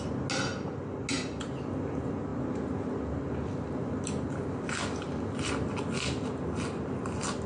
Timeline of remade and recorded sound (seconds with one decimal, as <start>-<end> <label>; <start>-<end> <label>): 0.0-7.5 recorded